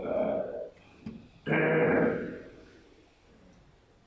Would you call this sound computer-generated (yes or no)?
no